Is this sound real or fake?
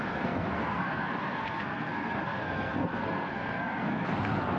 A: fake